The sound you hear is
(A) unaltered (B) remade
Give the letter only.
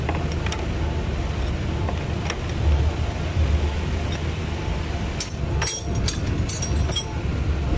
A